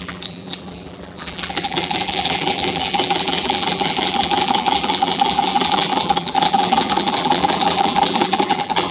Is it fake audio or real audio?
fake